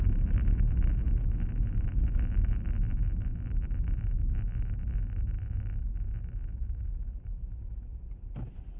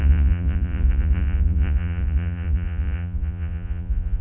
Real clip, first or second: first